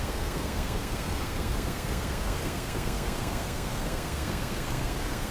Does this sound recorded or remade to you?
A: remade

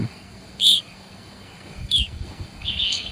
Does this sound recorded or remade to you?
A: remade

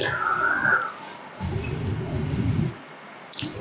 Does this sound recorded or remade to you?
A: recorded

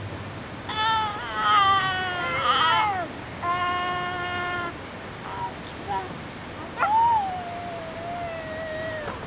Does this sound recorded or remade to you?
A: recorded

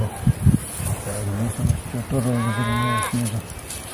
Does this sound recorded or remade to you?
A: recorded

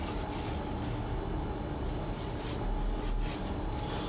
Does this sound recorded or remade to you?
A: recorded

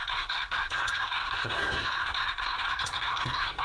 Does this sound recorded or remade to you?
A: remade